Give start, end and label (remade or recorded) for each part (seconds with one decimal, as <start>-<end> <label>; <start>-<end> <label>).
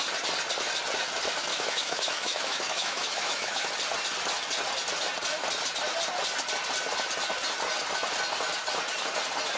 0.0-1.5 recorded; 1.5-3.7 remade; 3.7-9.6 recorded